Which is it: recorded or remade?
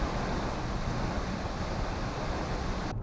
recorded